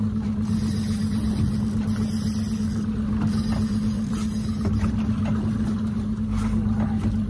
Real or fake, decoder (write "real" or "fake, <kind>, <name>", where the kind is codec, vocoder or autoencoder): real